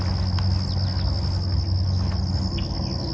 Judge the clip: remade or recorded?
recorded